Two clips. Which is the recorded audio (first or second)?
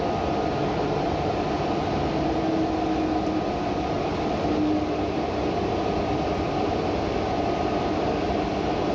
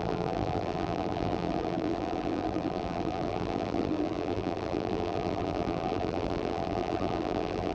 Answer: first